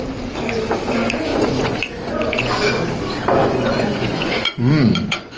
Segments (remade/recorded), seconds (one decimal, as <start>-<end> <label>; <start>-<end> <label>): 0.0-1.3 recorded; 1.3-2.7 remade; 2.7-3.4 recorded; 3.4-5.4 remade